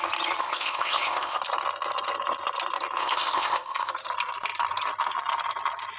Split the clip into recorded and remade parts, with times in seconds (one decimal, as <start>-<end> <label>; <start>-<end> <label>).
0.0-0.4 recorded; 0.4-1.4 remade; 1.4-3.0 recorded; 3.0-3.9 remade; 3.9-6.0 recorded